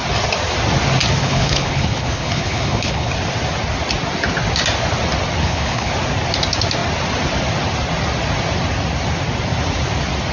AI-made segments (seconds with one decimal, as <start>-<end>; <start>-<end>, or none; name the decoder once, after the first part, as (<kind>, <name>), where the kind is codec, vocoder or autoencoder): 1.2-3.1 (codec, HILCodec); 5.4-5.9